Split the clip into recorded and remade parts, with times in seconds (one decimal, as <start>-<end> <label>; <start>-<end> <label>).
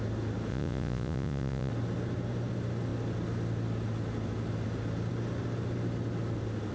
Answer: 0.0-0.5 recorded; 0.5-1.7 remade; 1.7-6.7 recorded